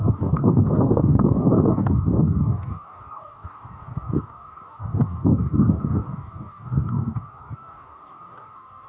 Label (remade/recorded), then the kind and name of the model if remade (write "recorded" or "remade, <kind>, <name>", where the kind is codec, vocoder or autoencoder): remade, codec, DAC